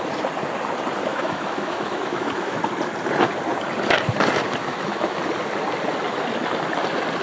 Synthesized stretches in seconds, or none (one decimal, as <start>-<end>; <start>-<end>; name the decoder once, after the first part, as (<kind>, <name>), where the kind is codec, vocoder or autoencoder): 1.1-2.6 (autoencoder, DAC-VAE); 4.6-5.2